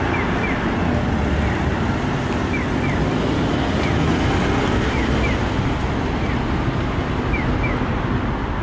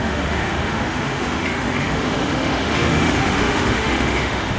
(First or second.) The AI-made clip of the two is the second